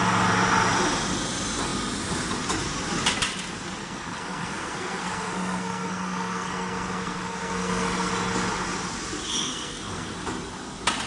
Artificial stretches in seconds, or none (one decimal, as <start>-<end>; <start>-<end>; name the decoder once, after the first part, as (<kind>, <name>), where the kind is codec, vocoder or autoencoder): 3.8-8.1 (codec, SNAC); 9.4-10.1